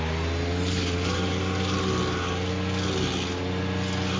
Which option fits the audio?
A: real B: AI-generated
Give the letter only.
A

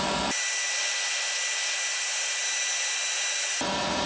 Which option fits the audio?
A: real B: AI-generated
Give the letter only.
A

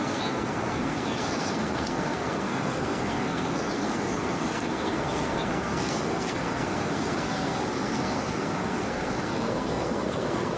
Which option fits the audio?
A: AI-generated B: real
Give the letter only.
A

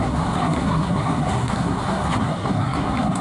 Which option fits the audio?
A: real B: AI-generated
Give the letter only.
B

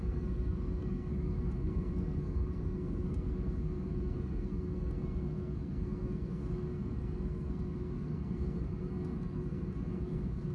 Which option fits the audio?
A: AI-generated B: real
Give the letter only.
A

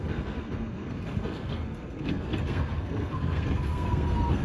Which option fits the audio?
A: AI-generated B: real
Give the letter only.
A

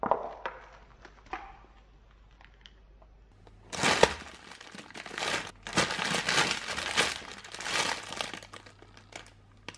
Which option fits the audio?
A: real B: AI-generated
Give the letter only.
A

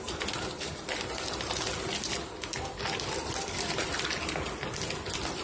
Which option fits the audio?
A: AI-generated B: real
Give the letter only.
B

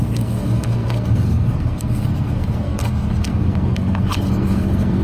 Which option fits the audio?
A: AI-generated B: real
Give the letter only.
A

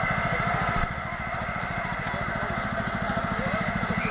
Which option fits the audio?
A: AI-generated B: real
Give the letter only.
B